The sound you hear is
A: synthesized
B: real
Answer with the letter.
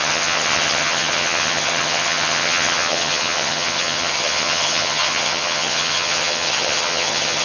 A